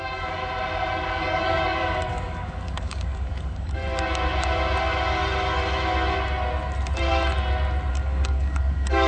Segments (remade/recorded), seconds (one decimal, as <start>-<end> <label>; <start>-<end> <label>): 0.0-0.4 remade; 0.4-0.9 recorded; 0.9-3.8 remade; 3.8-7.9 recorded; 7.9-9.1 remade